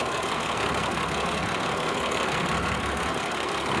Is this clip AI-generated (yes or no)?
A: yes